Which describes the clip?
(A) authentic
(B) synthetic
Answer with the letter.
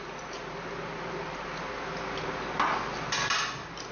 A